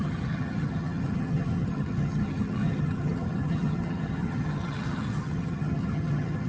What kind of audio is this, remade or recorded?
remade